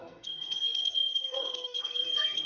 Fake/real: fake